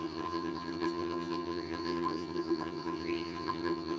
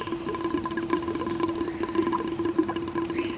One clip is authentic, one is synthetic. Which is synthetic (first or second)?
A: first